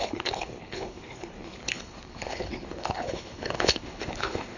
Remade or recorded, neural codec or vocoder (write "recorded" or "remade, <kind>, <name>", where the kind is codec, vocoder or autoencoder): remade, codec, HILCodec